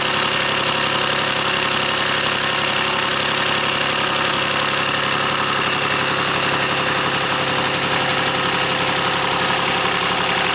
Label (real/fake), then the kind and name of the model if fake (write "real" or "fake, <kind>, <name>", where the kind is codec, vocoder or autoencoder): real